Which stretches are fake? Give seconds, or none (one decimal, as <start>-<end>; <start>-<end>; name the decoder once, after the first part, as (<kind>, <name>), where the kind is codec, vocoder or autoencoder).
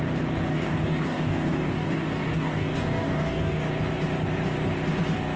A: 0.5-3.7 (codec, DAC)